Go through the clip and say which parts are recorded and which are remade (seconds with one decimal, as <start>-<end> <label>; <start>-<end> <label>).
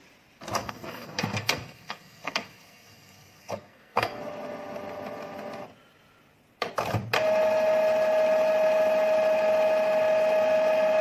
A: 0.0-0.6 recorded; 0.6-4.2 remade; 4.2-11.0 recorded